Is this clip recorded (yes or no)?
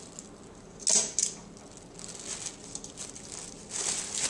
yes